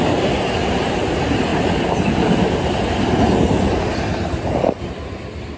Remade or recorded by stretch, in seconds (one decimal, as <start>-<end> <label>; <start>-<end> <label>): 0.0-5.6 recorded

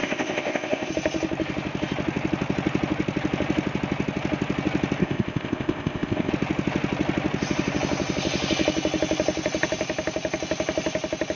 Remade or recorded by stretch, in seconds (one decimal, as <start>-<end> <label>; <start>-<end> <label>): 0.0-0.9 remade; 0.9-5.0 recorded; 5.0-6.3 remade; 6.3-11.4 recorded

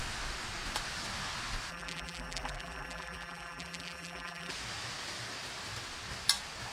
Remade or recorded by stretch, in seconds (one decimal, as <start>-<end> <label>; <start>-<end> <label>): 0.0-1.7 recorded; 1.7-4.5 remade; 4.5-6.7 recorded

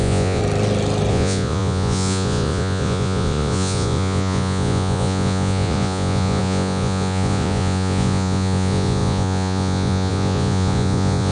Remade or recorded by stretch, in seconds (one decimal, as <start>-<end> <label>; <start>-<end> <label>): 0.0-0.4 remade; 0.4-1.1 recorded; 1.1-11.3 remade

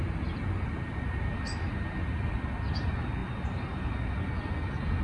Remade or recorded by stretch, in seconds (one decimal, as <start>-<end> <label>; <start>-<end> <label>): 0.0-3.2 recorded; 3.2-3.9 remade; 3.9-5.0 recorded

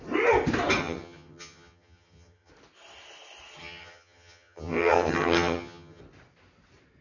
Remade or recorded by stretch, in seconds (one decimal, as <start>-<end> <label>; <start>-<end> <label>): 0.0-0.8 recorded; 0.8-2.5 remade; 2.5-3.6 recorded; 3.6-6.0 remade; 6.0-7.0 recorded

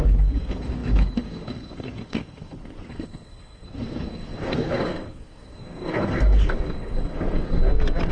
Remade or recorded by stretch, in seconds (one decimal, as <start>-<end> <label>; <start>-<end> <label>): 0.0-7.6 remade; 7.6-8.1 recorded

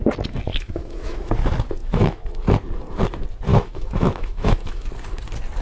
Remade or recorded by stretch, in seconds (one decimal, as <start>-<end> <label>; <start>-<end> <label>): 0.0-0.5 recorded; 0.5-1.3 remade; 1.3-1.8 recorded; 1.8-2.3 remade; 2.3-3.5 recorded; 3.5-4.9 remade; 4.9-5.6 recorded